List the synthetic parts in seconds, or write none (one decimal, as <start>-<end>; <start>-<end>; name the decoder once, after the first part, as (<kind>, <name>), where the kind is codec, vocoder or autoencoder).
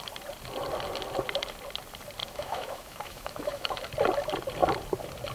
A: 2.2-3.8 (autoencoder, DAC-VAE)